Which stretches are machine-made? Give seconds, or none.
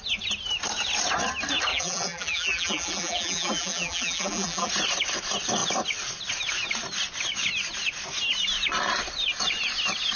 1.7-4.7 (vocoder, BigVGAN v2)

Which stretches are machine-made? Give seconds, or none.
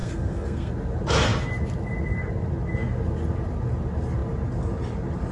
0.0-0.7 (codec, SNAC)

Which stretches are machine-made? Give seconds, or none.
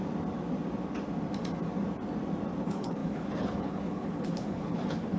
2.6-5.2 (codec, HILCodec)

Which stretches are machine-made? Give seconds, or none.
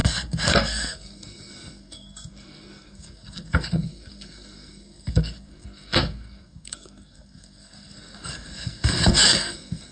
0.0-9.9 (codec, SNAC)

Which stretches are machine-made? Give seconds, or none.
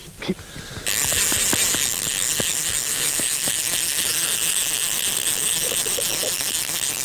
2.9-3.5 (autoencoder, DAC-VAE)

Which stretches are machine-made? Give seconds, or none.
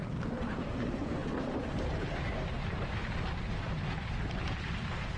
none